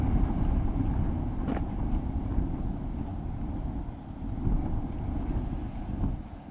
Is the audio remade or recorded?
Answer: recorded